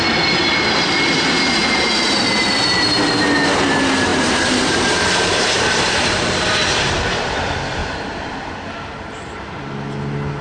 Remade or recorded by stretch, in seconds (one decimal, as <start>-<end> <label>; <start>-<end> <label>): 0.0-4.1 recorded; 4.1-6.9 remade; 6.9-7.8 recorded; 7.8-8.5 remade; 8.5-10.4 recorded